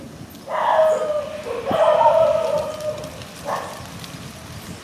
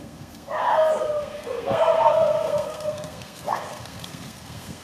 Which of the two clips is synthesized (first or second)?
second